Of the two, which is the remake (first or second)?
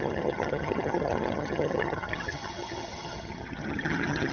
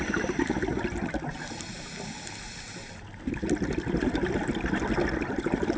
first